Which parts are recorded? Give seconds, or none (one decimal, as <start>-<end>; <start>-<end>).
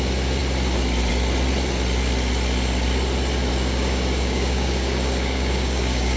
0.0-3.5